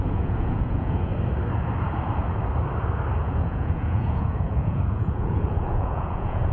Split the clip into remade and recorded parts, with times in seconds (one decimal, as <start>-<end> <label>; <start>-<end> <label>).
0.0-1.1 remade; 1.1-3.2 recorded; 3.2-6.5 remade